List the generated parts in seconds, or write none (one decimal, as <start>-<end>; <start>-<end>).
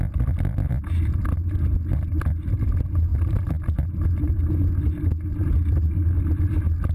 0.6-1.1; 3.1-4.7; 5.4-6.2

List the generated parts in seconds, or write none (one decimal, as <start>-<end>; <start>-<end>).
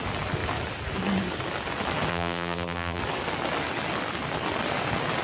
2.1-3.0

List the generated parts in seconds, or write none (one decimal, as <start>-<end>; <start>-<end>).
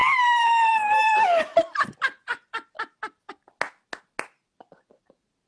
0.0-3.3